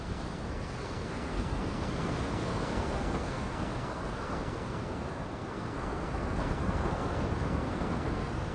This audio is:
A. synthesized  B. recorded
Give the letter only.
A